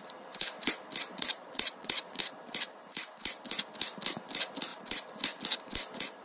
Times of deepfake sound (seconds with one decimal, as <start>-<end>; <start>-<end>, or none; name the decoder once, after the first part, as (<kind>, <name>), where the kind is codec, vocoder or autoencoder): 1.1-2.2 (vocoder, Vocos)